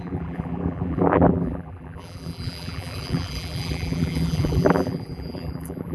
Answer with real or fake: fake